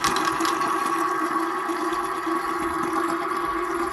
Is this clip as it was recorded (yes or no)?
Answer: yes